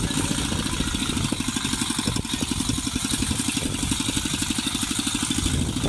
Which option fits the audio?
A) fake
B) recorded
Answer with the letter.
B